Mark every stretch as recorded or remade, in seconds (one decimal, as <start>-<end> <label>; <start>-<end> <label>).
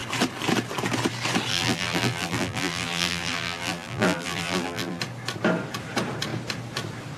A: 0.0-1.5 recorded; 1.5-5.0 remade; 5.0-7.2 recorded